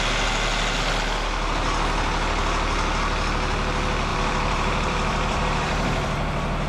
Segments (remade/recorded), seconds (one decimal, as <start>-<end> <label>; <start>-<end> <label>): 0.0-4.1 recorded; 4.1-6.7 remade